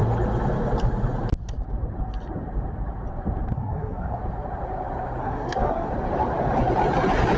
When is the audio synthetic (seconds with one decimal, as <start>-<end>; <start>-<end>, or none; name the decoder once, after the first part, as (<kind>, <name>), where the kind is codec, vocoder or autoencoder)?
3.5-4.2 (codec, SNAC); 5.2-5.9